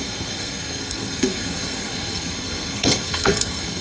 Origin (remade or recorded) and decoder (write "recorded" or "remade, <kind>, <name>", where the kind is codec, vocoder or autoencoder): remade, codec, SNAC